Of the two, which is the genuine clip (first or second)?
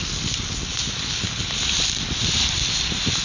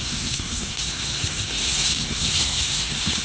first